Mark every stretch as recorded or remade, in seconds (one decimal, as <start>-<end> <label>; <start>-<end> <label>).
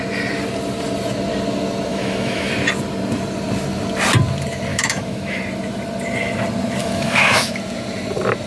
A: 0.0-1.9 recorded; 1.9-2.5 remade; 2.5-4.7 recorded; 4.7-5.4 remade; 5.4-6.8 recorded; 6.8-7.5 remade; 7.5-8.5 recorded